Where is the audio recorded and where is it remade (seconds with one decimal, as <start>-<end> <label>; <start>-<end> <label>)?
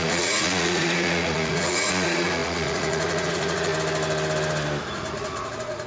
0.0-3.7 remade; 3.7-4.8 recorded; 4.8-5.9 remade